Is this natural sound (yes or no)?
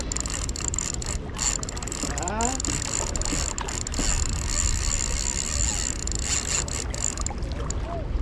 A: yes